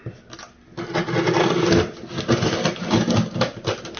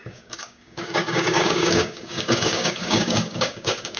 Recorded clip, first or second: first